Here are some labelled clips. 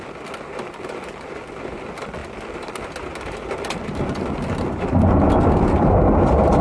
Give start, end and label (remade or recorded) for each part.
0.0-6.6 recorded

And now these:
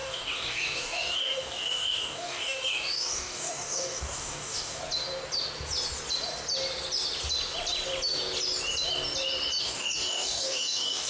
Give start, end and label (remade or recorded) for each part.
0.0-4.8 remade; 4.8-9.6 recorded; 9.6-11.1 remade

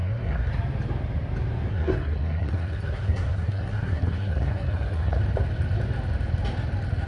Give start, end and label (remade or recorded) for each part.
0.0-0.5 remade; 0.5-1.7 recorded; 1.7-5.2 remade; 5.2-7.1 recorded

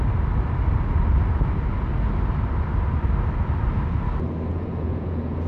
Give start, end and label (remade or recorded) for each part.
0.0-4.5 recorded; 4.5-5.5 remade

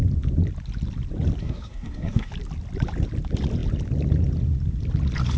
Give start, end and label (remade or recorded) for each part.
0.0-1.4 recorded; 1.4-2.3 remade; 2.3-5.4 recorded